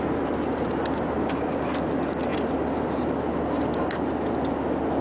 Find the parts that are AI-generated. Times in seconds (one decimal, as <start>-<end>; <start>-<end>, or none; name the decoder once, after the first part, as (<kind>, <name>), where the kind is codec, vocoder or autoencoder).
none